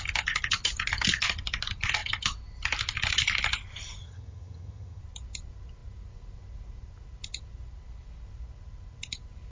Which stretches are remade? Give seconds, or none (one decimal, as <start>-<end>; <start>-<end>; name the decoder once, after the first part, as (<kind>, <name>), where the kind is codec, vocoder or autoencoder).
4.0-5.0 (vocoder, HiFi-GAN)